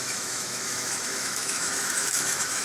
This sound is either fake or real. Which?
fake